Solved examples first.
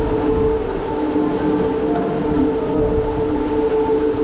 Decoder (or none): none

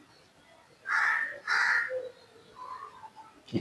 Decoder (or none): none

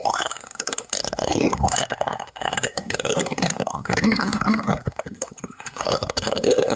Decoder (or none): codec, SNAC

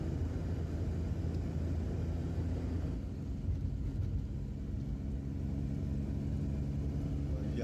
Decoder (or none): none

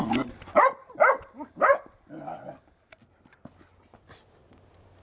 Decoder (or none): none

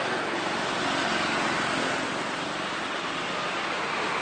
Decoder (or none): none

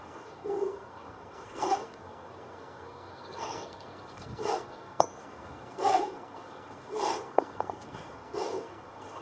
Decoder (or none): codec, SNAC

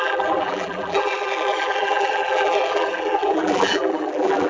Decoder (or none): vocoder, BigVGAN v2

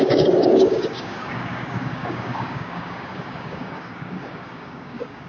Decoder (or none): codec, DAC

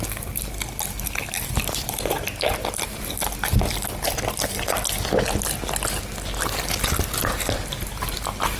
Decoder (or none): none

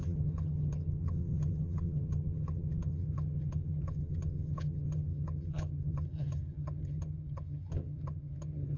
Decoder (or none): vocoder, HiFi-GAN